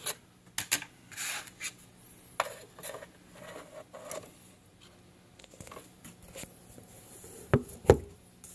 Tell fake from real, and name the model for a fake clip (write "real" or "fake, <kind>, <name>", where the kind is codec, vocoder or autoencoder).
real